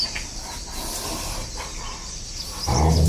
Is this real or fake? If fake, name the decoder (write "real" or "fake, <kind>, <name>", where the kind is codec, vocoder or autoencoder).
real